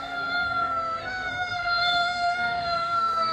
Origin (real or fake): fake